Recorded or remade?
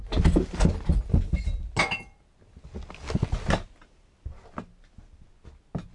recorded